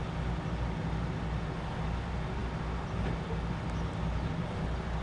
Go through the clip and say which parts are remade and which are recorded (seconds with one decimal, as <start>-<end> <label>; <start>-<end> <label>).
0.0-5.0 recorded